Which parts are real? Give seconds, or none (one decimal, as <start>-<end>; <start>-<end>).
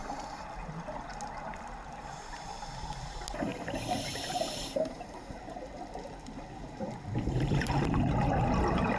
0.0-3.5; 5.9-9.0